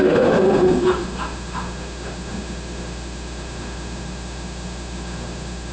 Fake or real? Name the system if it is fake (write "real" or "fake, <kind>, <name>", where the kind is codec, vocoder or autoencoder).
fake, autoencoder, DAC-VAE